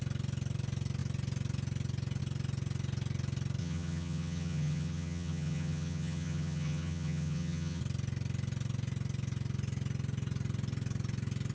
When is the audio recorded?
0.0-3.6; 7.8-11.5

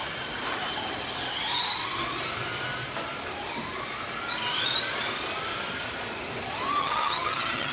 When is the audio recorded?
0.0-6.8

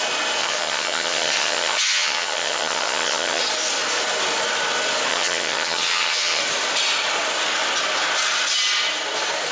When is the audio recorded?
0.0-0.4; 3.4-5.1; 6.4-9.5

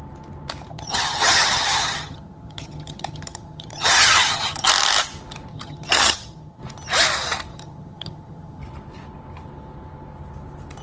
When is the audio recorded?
0.0-0.7; 4.7-5.5; 6.6-7.5; 8.6-10.8